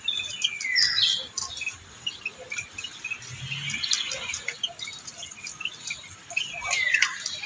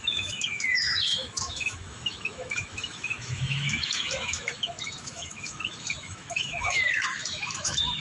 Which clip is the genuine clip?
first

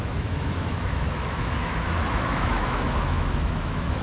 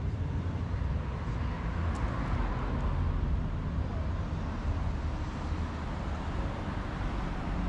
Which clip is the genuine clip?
second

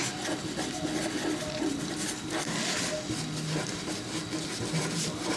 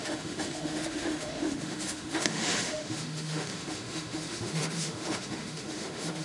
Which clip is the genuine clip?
first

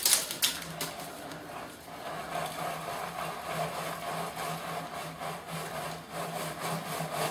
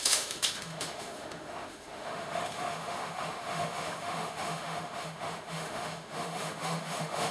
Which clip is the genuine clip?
first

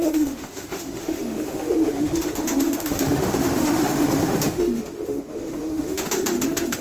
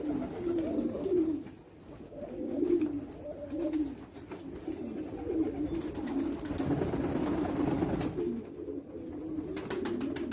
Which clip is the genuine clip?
second